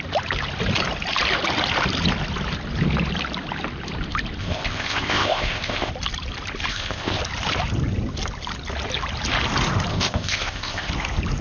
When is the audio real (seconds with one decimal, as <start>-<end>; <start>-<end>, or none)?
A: 0.0-4.4; 5.9-6.7; 7.2-9.9; 10.9-11.4